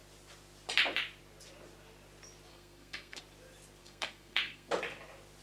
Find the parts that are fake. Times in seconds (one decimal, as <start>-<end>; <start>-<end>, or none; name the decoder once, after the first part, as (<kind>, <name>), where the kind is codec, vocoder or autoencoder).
2.5-3.2 (codec, SNAC); 3.8-4.7